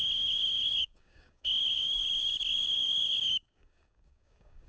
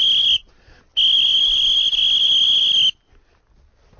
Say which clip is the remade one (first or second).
first